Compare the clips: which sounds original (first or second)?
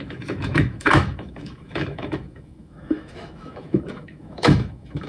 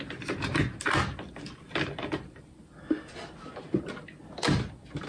second